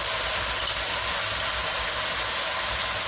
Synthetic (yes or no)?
no